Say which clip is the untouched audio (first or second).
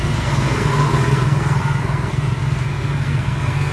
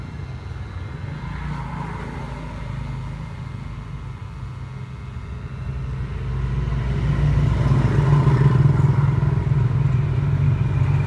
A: second